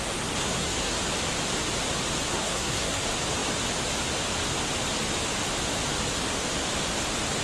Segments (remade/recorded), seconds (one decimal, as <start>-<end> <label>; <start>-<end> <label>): 0.0-0.4 recorded; 0.4-1.0 remade; 1.0-2.3 recorded; 2.3-3.0 remade; 3.0-7.4 recorded